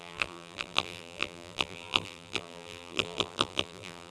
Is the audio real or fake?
fake